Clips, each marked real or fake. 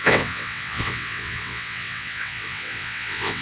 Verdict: fake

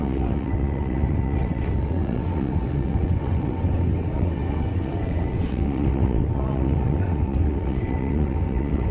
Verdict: fake